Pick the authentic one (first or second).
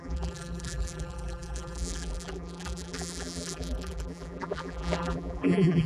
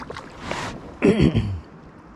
second